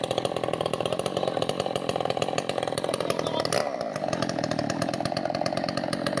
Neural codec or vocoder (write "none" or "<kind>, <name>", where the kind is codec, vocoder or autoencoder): none